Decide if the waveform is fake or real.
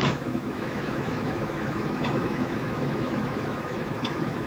fake